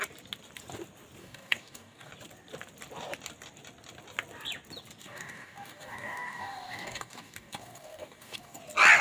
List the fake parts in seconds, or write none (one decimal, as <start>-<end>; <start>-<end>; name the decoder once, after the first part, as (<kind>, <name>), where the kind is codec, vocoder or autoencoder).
1.2-2.1 (codec, DAC); 5.0-8.6

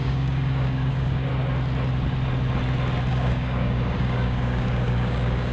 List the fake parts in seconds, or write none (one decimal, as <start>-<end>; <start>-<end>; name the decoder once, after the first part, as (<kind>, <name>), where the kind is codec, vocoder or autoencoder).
0.0-1.3 (codec, DAC); 3.1-5.5

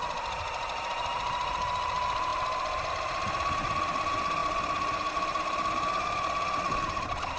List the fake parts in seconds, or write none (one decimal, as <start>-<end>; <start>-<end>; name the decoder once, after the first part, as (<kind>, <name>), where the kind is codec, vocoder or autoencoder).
none